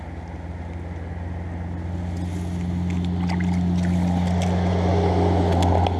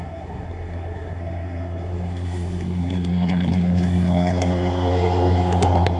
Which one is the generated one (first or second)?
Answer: second